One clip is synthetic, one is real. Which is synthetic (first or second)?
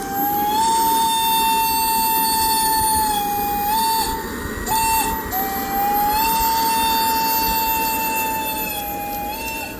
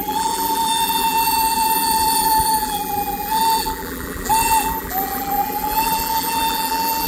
second